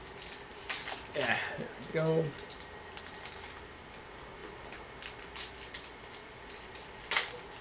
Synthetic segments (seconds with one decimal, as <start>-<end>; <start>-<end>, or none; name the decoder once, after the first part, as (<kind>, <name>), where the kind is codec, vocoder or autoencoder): none